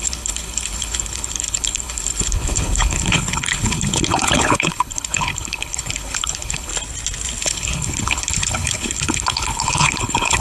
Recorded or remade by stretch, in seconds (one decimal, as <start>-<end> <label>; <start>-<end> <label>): 0.0-6.7 remade; 6.7-7.4 recorded; 7.4-10.4 remade

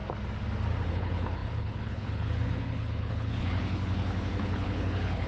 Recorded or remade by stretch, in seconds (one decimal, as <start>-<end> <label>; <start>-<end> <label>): 0.0-0.9 recorded; 0.9-5.3 remade

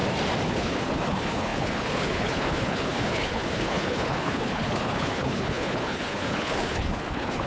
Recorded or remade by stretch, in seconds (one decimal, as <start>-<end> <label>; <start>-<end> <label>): 0.0-0.5 recorded; 0.5-7.5 remade

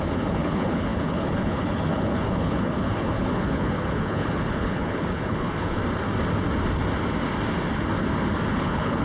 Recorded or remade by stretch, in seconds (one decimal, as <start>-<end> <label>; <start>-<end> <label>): 0.0-5.8 remade; 5.8-8.5 recorded; 8.5-9.0 remade

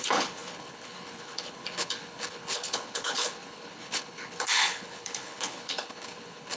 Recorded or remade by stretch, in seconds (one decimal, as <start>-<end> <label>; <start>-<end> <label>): 0.0-6.6 remade

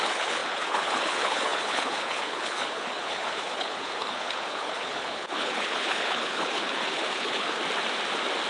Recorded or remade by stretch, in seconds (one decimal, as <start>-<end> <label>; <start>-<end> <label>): 0.0-7.6 remade; 7.6-8.5 recorded

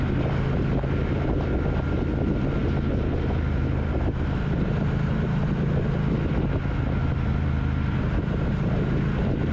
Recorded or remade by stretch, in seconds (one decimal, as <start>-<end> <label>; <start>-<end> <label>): 0.0-9.5 recorded

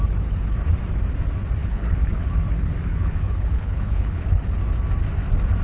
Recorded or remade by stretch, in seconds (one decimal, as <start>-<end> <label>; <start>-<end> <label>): 0.0-1.6 recorded; 1.6-2.4 remade; 2.4-2.9 recorded; 2.9-4.4 remade; 4.4-5.6 recorded